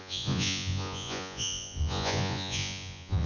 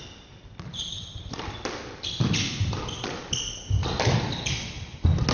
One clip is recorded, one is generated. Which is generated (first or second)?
first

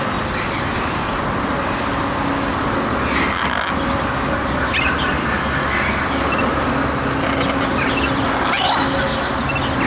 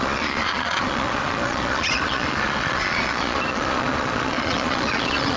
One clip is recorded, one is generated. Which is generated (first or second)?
second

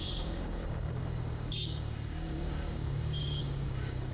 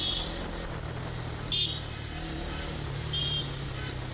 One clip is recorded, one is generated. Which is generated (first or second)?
first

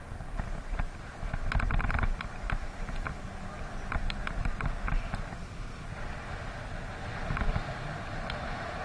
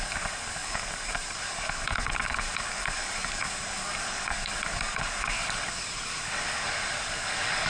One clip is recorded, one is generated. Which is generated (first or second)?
second